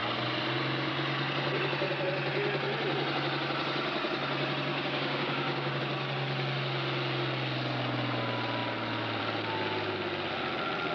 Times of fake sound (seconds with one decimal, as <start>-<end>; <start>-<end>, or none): 4.7-5.8